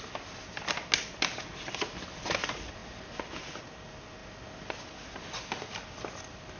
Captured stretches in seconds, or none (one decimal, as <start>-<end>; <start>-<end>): 0.0-6.6